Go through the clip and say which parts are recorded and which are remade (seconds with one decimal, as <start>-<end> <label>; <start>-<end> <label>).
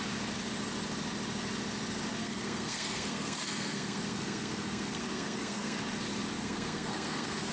0.0-2.2 recorded; 2.2-5.8 remade; 5.8-6.4 recorded; 6.4-7.5 remade